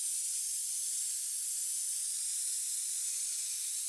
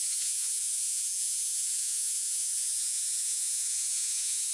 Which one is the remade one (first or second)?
second